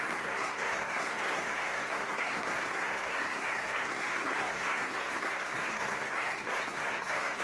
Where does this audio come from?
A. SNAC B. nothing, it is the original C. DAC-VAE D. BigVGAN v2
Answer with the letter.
A